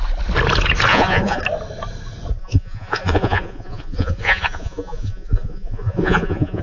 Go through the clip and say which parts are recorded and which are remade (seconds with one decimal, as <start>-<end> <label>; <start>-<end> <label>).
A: 0.0-0.9 recorded; 0.9-1.4 remade; 1.4-2.4 recorded; 2.4-6.6 remade